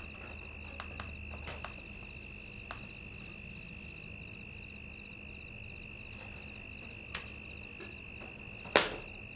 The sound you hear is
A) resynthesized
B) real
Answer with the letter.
B